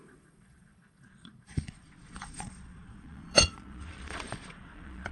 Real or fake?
fake